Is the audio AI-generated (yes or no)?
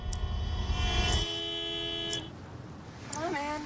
no